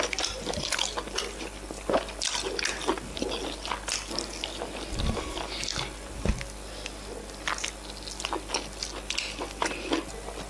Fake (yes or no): no